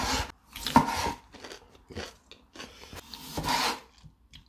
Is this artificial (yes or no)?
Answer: no